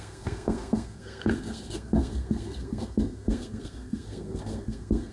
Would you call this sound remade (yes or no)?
yes